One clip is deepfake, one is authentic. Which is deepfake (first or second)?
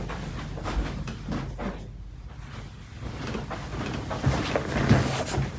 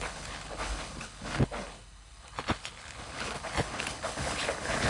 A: second